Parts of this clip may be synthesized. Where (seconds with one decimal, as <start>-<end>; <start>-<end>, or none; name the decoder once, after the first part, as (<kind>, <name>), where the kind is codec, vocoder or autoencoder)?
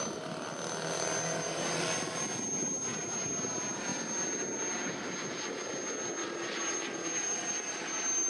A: none